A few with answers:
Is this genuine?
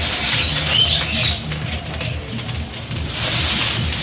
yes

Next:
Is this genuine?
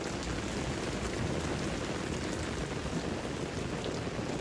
yes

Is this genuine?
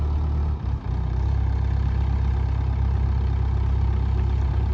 yes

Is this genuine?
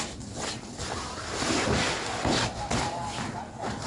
yes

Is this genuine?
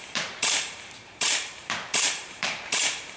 no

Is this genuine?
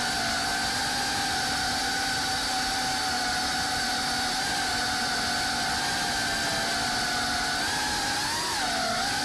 yes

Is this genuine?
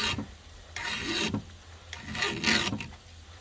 yes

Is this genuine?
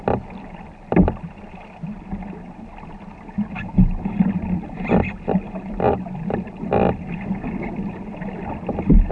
yes